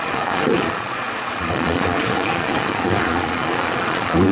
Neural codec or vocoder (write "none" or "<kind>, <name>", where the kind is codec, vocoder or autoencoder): vocoder, Vocos